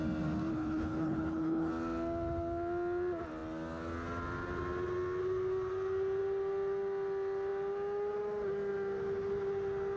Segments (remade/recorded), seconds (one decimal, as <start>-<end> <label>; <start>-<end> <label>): 0.0-0.5 recorded; 0.5-1.7 remade; 1.7-10.0 recorded